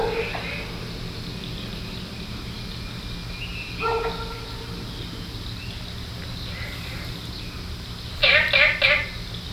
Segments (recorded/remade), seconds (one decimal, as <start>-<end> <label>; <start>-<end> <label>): 0.0-1.5 recorded; 1.5-2.4 remade; 2.4-9.5 recorded